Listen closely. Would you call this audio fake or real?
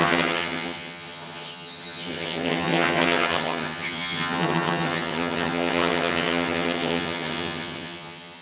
fake